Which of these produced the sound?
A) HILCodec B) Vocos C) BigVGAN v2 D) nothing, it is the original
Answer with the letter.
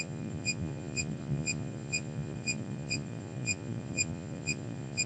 B